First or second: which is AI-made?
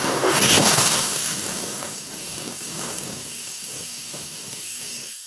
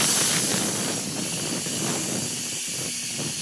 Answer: first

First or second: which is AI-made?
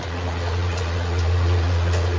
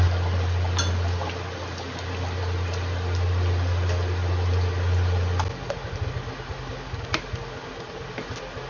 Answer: first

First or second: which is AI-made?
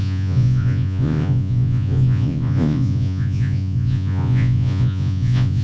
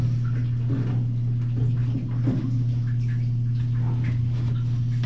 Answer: first